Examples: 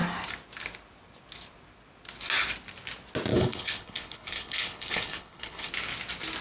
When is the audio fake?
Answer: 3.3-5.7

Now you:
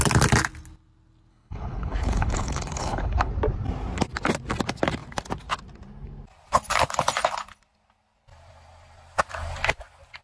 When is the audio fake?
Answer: 1.3-3.3

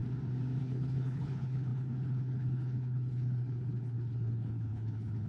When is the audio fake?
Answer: 0.6-5.3

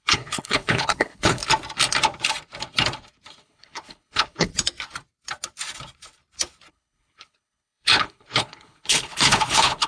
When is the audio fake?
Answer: 0.0-1.4; 3.4-4.5; 6.7-9.9

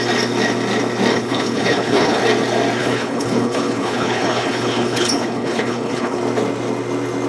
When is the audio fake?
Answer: 1.1-2.2; 2.8-6.2